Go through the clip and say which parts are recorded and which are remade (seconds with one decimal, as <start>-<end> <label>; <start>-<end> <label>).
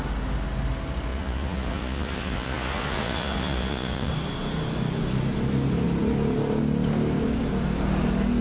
0.0-1.1 recorded; 1.1-4.1 remade; 4.1-8.4 recorded